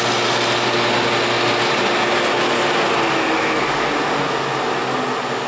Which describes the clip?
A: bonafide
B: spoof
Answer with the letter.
A